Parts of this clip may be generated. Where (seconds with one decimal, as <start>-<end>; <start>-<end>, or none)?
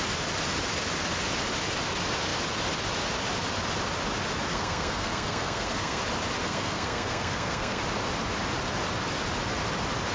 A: 4.5-6.0; 6.4-7.8